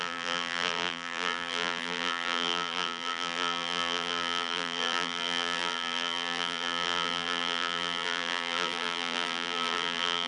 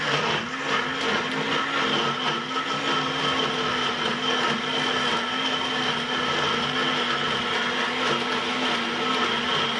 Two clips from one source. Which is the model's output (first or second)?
first